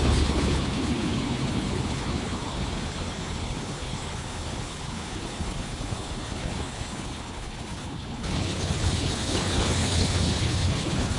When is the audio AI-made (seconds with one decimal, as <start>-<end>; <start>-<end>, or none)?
0.0-11.2

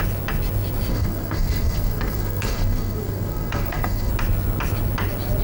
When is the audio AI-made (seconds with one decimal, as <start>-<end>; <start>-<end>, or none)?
0.9-4.1

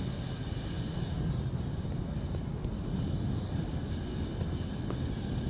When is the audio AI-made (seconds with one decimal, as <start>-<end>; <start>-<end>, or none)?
0.4-3.7